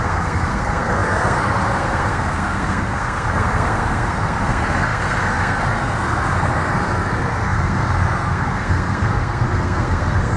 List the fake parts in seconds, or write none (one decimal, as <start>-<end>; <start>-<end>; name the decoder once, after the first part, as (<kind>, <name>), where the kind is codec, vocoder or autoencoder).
0.0-10.4 (codec, SNAC)